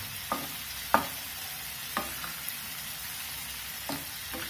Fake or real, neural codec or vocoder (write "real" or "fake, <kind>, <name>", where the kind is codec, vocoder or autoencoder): real